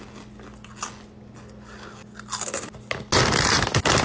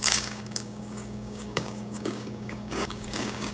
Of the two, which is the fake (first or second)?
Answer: second